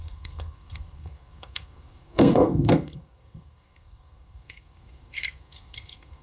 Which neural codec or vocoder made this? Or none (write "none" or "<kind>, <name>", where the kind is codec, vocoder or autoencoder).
codec, SNAC